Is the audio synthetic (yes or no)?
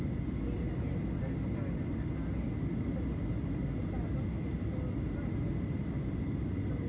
no